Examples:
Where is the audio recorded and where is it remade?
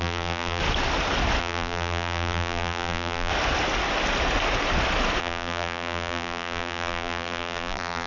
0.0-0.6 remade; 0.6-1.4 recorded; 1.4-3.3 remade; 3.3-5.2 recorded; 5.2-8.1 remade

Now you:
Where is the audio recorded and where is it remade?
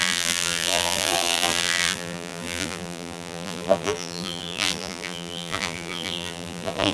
0.0-6.9 remade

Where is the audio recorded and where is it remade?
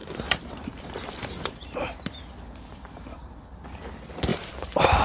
0.0-2.1 remade; 2.1-2.7 recorded; 2.7-3.4 remade; 3.4-4.3 recorded; 4.3-5.0 remade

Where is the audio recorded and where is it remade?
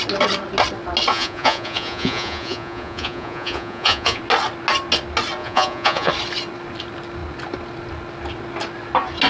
0.0-1.1 recorded; 1.1-4.2 remade; 4.2-5.4 recorded; 5.4-6.1 remade; 6.1-9.3 recorded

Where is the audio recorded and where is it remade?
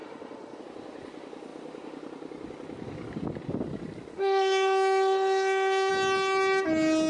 0.0-0.6 remade; 0.6-4.1 recorded; 4.1-5.9 remade; 5.9-7.1 recorded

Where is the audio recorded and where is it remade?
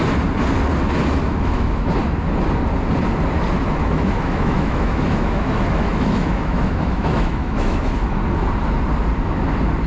0.0-1.2 recorded; 1.2-1.9 remade; 1.9-3.8 recorded; 3.8-8.2 remade; 8.2-9.9 recorded